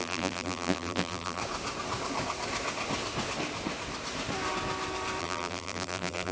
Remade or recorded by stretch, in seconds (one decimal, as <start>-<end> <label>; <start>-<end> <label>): 0.0-1.4 remade; 1.4-5.2 recorded; 5.2-6.3 remade

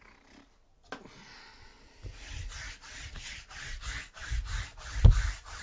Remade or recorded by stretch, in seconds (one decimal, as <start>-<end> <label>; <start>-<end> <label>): 0.0-1.5 recorded; 1.5-2.7 remade; 2.7-4.2 recorded; 4.2-5.6 remade

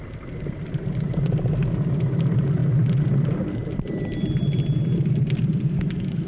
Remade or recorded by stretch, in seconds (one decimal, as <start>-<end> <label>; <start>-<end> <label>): 0.0-6.3 recorded

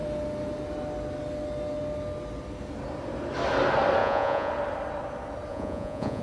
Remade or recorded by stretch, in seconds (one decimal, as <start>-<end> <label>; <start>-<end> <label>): 0.0-4.0 recorded; 4.0-4.5 remade; 4.5-5.5 recorded; 5.5-6.2 remade

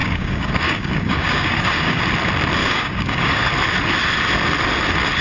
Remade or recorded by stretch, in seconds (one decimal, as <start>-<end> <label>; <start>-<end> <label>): 0.0-2.0 remade; 2.0-2.6 recorded; 2.6-3.5 remade; 3.5-5.2 recorded

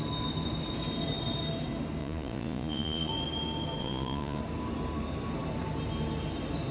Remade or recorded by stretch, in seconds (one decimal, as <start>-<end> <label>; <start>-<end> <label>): 0.0-2.0 recorded; 2.0-3.1 remade; 3.1-3.8 recorded; 3.8-4.4 remade; 4.4-6.7 recorded

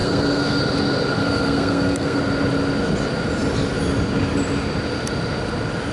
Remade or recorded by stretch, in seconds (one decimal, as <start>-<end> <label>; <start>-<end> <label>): 0.0-0.6 remade; 0.6-1.2 recorded; 1.2-2.2 remade; 2.2-5.9 recorded